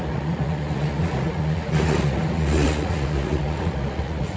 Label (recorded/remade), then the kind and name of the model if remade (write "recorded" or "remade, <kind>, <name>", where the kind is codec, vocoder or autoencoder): remade, vocoder, Vocos